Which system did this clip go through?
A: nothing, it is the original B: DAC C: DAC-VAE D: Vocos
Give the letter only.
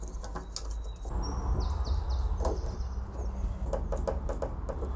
A